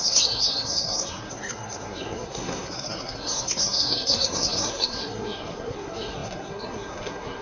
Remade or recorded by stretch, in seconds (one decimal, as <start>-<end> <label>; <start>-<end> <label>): 0.0-7.4 remade